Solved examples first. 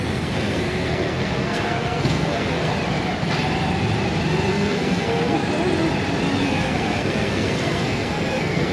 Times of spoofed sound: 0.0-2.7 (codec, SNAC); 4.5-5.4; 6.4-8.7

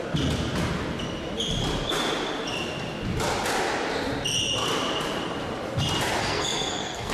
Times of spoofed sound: 6.2-7.1 (codec, SNAC)

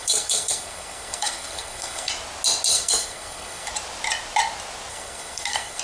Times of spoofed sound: 0.0-2.1 (codec, SNAC); 2.7-3.7; 4.9-5.8

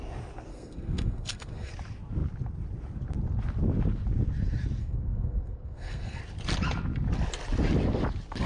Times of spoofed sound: 0.5-1.7 (codec, SNAC); 4.8-6.2

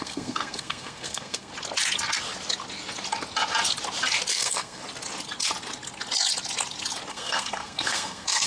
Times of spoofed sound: 0.0-1.5 (codec, SNAC); 4.3-4.8; 7.1-8.5